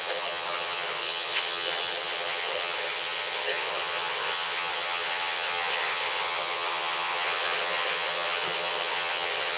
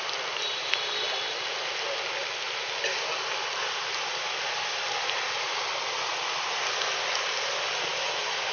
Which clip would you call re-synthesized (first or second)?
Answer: first